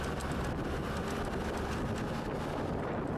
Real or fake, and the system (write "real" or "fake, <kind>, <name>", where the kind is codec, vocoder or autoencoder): real